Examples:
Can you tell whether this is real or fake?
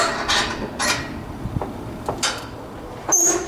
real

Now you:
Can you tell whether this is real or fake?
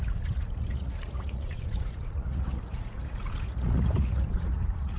fake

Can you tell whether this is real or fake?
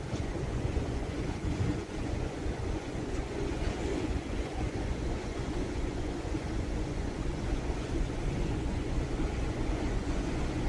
fake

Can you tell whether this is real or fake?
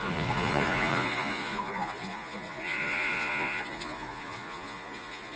fake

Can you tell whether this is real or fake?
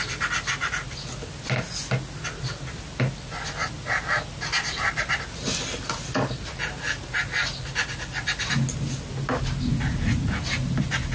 real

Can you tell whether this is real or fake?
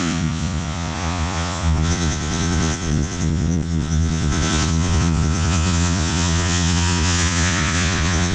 fake